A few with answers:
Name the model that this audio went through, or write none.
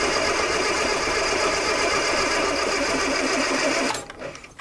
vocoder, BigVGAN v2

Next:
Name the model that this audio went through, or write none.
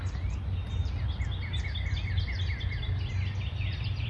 none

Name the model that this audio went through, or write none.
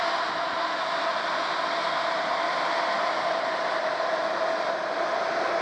none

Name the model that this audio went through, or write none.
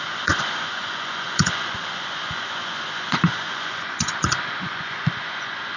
vocoder, Vocos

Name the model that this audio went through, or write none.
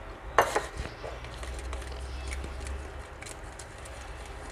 none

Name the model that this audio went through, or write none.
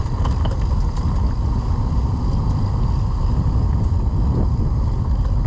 none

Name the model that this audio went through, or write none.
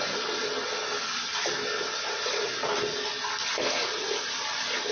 none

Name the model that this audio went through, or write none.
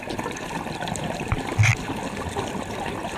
none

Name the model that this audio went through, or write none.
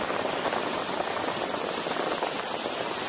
none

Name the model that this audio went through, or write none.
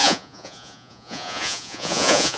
vocoder, Vocos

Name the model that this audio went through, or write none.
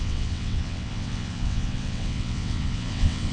vocoder, WaveNeXt